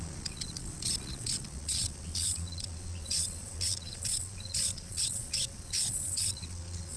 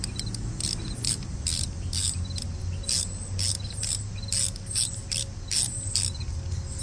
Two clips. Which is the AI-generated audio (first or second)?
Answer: first